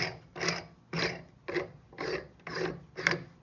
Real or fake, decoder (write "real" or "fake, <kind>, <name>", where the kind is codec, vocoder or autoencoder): real